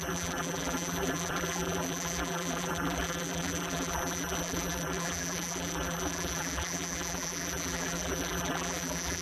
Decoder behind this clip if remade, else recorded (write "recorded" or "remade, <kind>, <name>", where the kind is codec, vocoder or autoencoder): remade, vocoder, BigVGAN v2